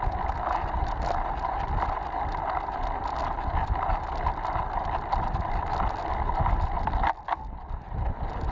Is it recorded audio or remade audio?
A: recorded